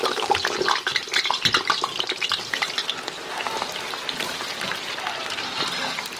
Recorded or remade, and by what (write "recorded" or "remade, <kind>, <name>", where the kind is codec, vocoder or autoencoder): recorded